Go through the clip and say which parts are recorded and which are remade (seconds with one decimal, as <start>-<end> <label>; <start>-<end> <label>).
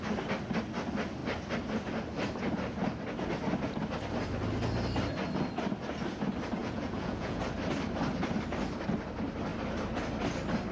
0.0-6.6 recorded; 6.6-7.4 remade; 7.4-10.7 recorded